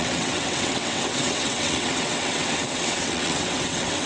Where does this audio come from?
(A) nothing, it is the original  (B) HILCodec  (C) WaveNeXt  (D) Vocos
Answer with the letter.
C